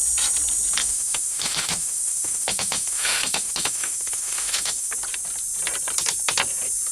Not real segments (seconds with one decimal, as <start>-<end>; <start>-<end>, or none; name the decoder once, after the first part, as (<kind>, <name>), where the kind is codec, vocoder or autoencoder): 0.8-4.9 (autoencoder, DAC-VAE)